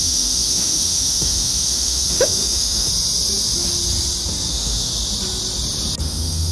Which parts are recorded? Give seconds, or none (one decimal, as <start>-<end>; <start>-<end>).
2.9-4.5; 4.9-6.0